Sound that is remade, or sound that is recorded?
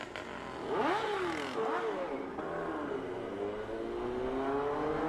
recorded